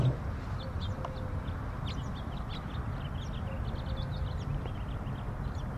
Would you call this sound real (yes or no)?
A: yes